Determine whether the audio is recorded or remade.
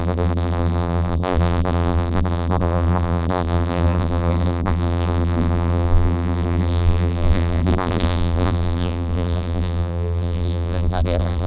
remade